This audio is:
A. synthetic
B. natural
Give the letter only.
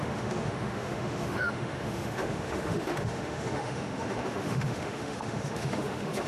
A